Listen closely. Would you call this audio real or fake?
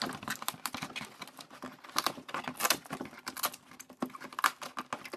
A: real